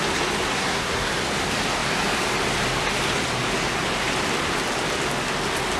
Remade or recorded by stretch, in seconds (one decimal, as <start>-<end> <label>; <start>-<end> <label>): 0.0-0.5 recorded; 0.5-1.1 remade; 1.1-5.8 recorded